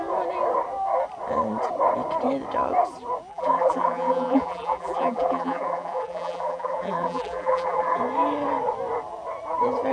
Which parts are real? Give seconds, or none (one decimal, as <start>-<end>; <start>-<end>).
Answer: 0.0-3.3; 8.0-9.9